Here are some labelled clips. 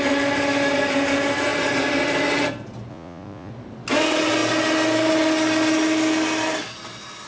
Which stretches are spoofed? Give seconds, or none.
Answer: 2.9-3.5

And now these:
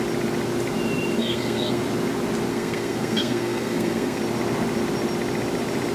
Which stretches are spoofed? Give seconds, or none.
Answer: 1.2-1.8; 2.5-4.2

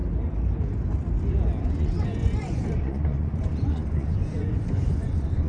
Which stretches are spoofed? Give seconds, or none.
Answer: 1.6-5.5

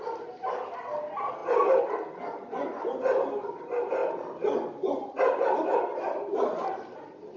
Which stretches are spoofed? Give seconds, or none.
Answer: none